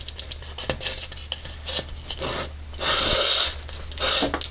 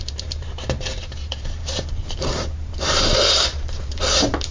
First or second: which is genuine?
first